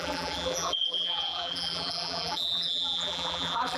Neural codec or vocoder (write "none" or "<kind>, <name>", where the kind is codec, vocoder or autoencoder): vocoder, BigVGAN v2